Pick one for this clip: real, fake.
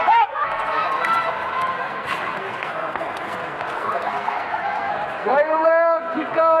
fake